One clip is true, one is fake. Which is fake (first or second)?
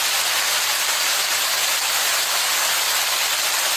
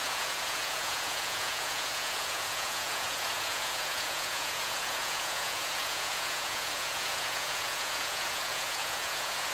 second